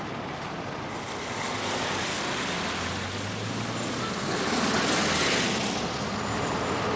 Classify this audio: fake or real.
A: real